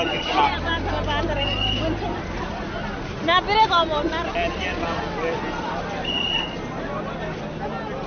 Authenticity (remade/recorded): recorded